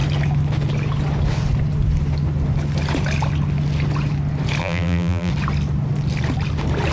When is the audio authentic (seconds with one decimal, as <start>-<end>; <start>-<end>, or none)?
0.0-4.6; 5.3-6.9